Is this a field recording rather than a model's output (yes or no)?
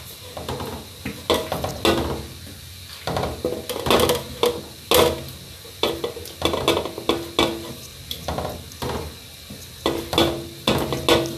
yes